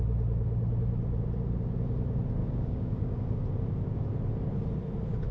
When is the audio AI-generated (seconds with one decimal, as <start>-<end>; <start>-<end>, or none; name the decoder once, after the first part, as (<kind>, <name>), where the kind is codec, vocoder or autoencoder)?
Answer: 2.4-3.4 (codec, DAC)